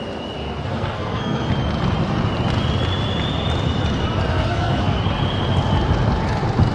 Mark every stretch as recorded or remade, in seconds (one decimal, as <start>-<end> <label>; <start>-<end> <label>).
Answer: 0.0-0.7 recorded; 0.7-1.5 remade; 1.5-4.3 recorded; 4.3-5.0 remade; 5.0-6.7 recorded